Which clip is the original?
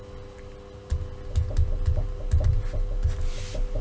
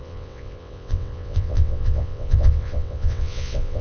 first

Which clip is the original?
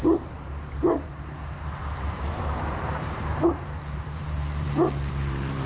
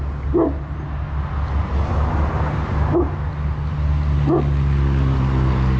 second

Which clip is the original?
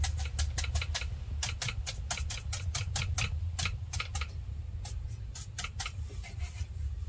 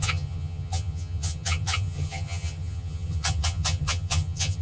first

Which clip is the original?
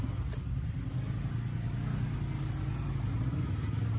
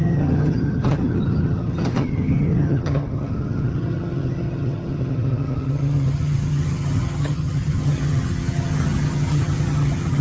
first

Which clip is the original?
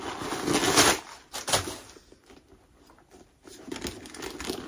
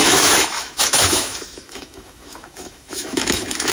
first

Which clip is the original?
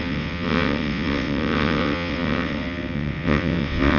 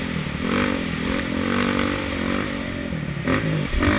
second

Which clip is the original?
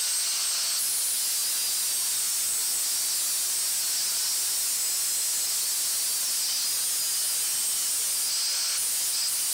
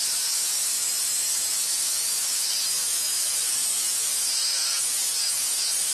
first